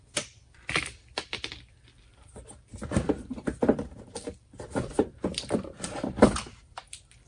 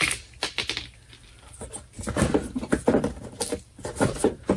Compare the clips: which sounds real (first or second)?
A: second